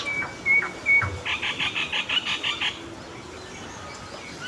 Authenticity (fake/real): real